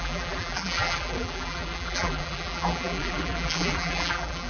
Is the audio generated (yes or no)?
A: yes